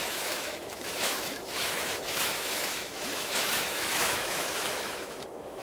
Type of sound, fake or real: fake